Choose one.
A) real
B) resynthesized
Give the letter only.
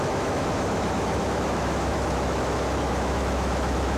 B